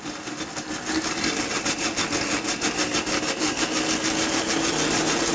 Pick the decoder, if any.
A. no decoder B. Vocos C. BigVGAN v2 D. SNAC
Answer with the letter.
A